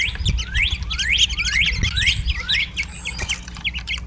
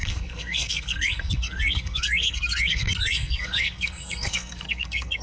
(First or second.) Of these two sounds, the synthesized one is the second